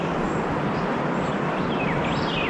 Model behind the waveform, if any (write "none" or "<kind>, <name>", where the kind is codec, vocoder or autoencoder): none